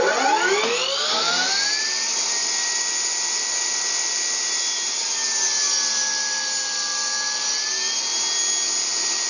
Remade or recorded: recorded